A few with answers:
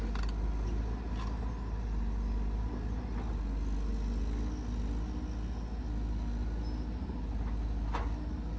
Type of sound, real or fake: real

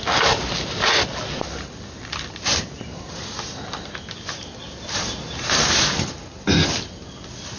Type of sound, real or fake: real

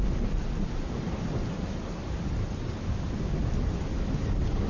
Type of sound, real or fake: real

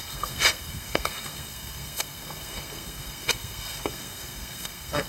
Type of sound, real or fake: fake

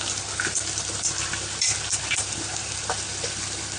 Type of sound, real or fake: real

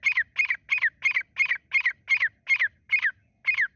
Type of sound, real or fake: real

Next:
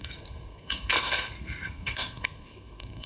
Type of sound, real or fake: fake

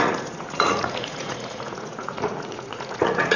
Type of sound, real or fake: fake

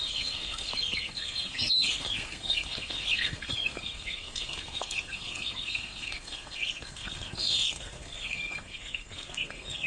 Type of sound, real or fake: fake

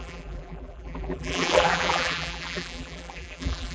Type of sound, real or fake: fake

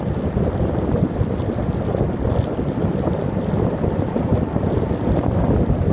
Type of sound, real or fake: real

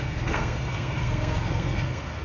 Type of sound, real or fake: fake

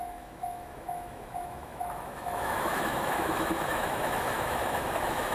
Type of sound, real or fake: fake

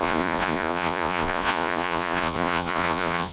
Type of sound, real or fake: fake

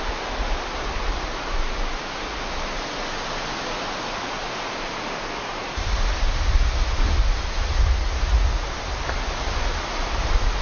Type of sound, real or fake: real